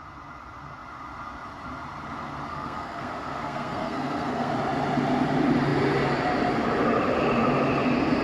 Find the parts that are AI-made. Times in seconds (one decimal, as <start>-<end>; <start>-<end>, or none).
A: 2.5-4.5